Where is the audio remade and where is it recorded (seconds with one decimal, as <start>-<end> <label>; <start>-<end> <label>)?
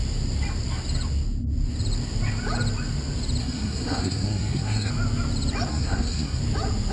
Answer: 0.0-3.4 recorded; 3.4-4.9 remade; 4.9-5.7 recorded; 5.7-6.4 remade; 6.4-6.9 recorded